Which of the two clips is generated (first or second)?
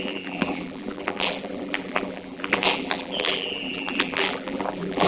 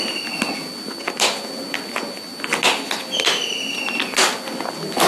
first